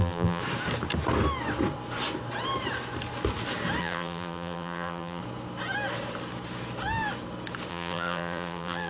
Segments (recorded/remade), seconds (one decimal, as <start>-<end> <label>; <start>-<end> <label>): 0.0-0.4 remade; 0.4-3.8 recorded; 3.8-5.2 remade; 5.2-7.7 recorded; 7.7-8.9 remade